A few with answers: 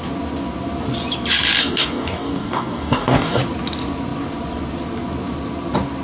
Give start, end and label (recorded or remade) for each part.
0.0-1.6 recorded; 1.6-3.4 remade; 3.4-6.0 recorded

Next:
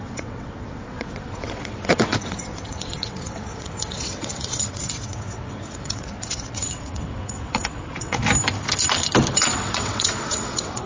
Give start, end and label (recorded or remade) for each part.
0.0-8.2 remade; 8.2-9.3 recorded; 9.3-10.9 remade

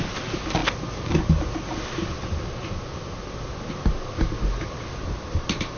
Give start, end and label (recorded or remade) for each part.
0.0-5.8 recorded

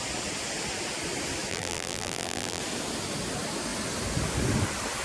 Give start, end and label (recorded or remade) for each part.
0.0-1.5 recorded; 1.5-2.6 remade; 2.6-5.0 recorded

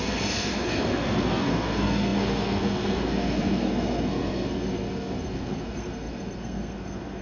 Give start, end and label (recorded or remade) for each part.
0.0-7.2 remade

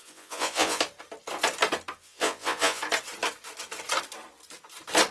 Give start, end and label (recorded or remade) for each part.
0.0-0.8 remade; 0.8-2.0 recorded; 2.0-2.8 remade; 2.8-5.1 recorded

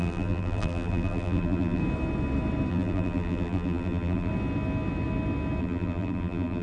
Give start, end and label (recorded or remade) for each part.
0.0-1.8 remade; 1.8-2.7 recorded; 2.7-4.3 remade; 4.3-5.6 recorded; 5.6-6.6 remade